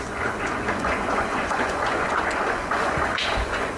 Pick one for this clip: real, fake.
fake